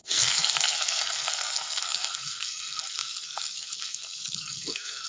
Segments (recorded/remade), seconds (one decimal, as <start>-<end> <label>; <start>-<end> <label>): 0.0-5.1 remade